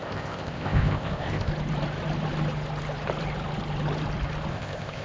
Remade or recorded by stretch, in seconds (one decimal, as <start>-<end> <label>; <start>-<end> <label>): 0.0-1.5 remade; 1.5-4.5 recorded; 4.5-5.0 remade